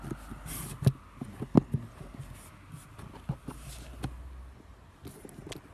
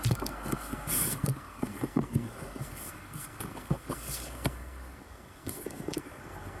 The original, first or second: first